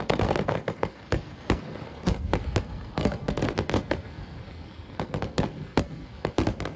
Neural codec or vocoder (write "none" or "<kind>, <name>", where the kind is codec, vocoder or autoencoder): codec, SNAC